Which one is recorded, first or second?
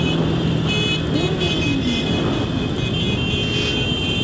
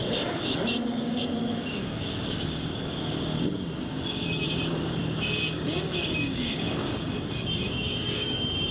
first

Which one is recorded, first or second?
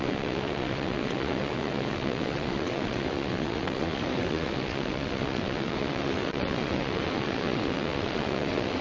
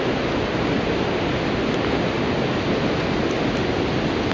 second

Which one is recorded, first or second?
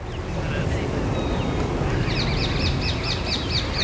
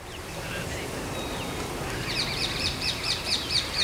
first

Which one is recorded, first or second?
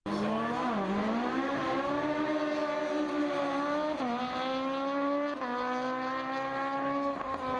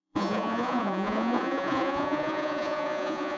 first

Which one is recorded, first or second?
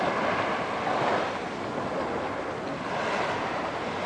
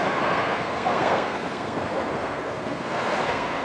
first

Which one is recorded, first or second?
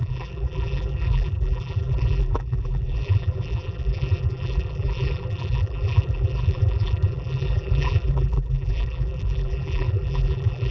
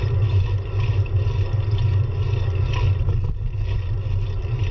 second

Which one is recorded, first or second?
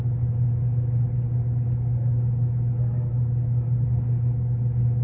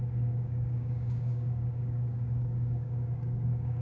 first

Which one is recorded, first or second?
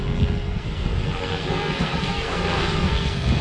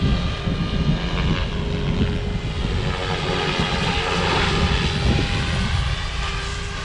second